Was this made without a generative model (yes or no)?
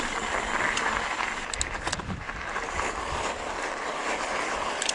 yes